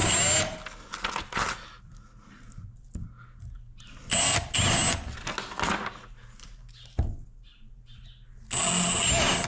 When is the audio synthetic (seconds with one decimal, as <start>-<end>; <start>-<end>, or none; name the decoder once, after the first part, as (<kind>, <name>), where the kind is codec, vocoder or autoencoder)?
none